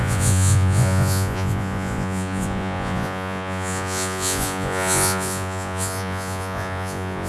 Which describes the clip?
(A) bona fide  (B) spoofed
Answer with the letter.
B